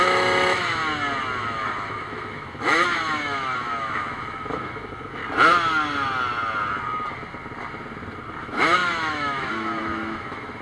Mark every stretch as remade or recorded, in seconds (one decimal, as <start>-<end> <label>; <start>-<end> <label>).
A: 0.0-0.8 remade; 0.8-1.4 recorded; 1.4-5.2 remade; 5.2-8.4 recorded; 8.4-10.6 remade